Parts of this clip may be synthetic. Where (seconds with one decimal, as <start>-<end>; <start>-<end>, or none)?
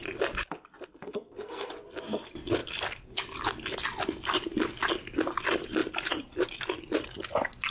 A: 0.9-1.7